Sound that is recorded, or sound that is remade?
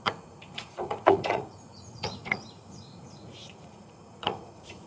remade